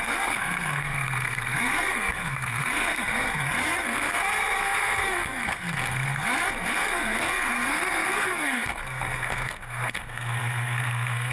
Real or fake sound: fake